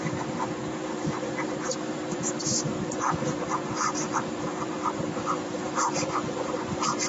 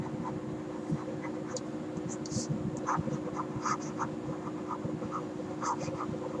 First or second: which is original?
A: second